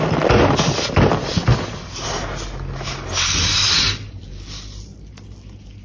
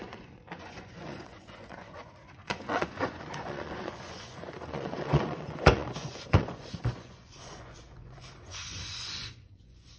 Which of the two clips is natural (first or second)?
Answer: first